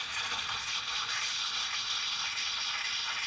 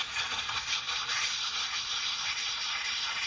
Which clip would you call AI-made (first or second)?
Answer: second